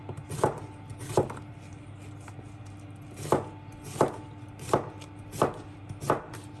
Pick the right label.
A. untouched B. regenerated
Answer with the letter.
A